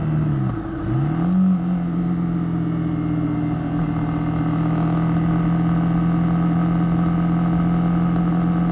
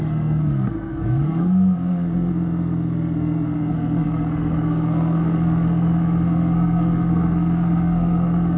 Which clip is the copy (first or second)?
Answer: second